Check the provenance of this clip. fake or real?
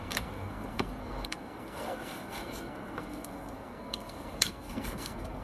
fake